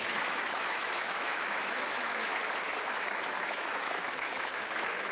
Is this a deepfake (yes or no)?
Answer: yes